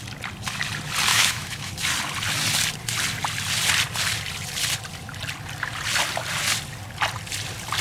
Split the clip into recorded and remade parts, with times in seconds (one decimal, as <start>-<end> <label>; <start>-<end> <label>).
0.0-1.1 recorded; 1.1-1.7 remade; 1.7-7.8 recorded